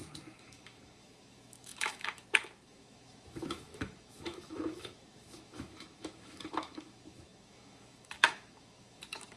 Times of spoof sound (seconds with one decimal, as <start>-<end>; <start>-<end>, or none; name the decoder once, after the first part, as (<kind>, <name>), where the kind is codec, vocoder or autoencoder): 0.0-9.4 (autoencoder, DAC-VAE)